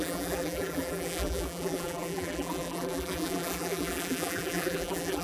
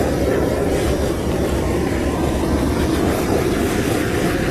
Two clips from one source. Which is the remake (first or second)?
first